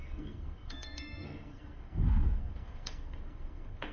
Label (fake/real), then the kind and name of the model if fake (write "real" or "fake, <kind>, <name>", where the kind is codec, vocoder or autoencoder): fake, codec, SNAC